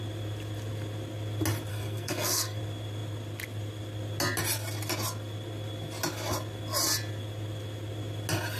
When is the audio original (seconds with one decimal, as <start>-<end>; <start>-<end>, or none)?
0.0-1.7; 2.6-8.6